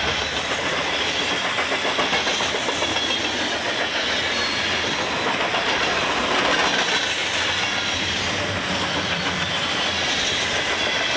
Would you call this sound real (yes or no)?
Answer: yes